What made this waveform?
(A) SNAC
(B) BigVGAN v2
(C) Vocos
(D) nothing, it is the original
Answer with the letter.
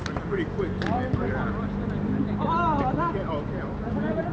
D